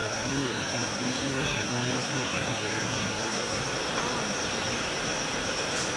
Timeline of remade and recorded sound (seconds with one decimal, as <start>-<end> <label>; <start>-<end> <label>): 0.0-3.6 remade; 3.6-6.0 recorded